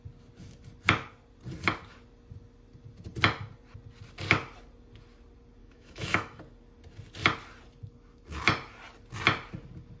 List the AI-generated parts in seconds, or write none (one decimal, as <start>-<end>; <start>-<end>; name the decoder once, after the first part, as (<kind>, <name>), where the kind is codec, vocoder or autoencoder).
5.6-6.4 (autoencoder, DAC-VAE)